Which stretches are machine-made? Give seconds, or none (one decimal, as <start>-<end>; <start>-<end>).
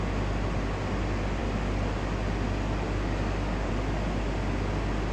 none